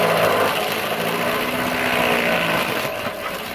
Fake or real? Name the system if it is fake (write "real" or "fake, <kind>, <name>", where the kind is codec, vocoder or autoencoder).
real